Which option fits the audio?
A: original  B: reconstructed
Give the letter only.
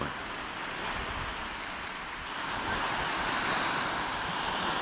A